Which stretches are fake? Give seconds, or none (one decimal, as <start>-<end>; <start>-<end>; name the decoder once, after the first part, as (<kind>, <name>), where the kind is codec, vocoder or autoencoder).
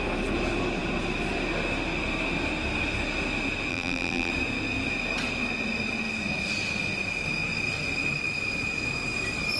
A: 3.7-4.3 (vocoder, BigVGAN v2)